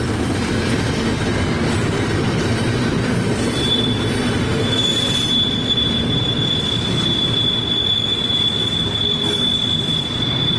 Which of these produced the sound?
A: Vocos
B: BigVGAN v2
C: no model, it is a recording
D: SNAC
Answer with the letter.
C